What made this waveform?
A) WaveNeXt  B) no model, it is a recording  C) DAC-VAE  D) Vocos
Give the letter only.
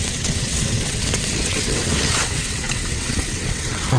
A